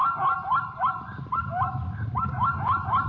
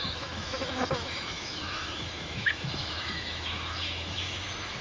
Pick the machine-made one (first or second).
second